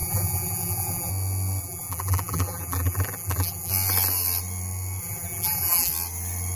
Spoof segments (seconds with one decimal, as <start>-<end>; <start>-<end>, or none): 0.0-1.1; 1.6-3.7; 5.0-5.9